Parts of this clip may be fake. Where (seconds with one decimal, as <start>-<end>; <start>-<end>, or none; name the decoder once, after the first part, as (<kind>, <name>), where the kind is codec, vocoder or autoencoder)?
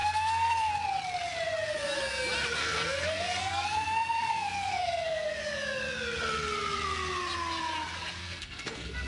0.0-0.7 (codec, SNAC); 2.6-5.4; 8.2-9.1